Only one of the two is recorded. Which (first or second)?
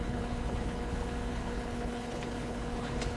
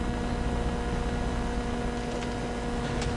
second